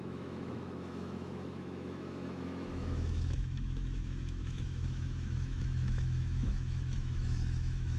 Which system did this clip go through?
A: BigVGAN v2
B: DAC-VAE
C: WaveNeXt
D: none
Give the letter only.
B